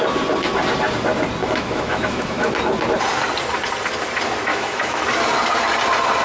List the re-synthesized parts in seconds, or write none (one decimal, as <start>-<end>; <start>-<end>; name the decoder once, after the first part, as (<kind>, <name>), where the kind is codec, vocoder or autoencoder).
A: 1.4-2.5 (autoencoder, DAC-VAE); 4.5-5.0